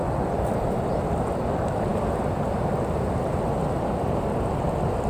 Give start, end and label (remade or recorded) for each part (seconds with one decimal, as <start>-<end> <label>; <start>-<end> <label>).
0.0-5.1 recorded